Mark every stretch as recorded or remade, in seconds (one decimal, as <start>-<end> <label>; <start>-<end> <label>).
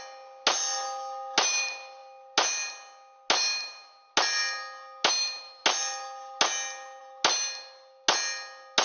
0.0-8.8 recorded